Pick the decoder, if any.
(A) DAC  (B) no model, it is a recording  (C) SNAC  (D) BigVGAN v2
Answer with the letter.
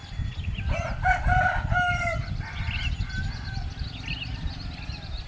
B